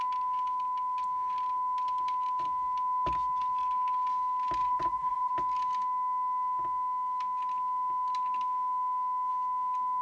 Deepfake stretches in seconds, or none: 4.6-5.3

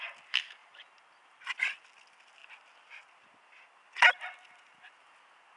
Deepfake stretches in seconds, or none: 0.6-1.7

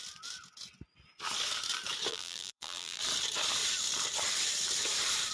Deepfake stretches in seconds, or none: 2.1-3.0

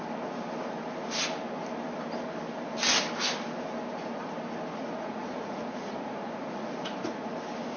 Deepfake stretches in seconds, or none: 4.7-7.3

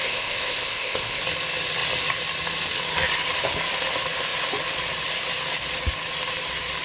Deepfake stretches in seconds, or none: 0.0-1.2

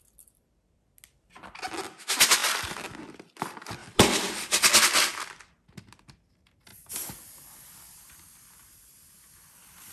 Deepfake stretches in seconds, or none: none

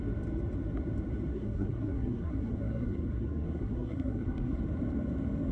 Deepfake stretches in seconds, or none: 1.3-4.6